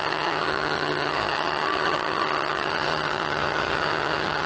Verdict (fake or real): fake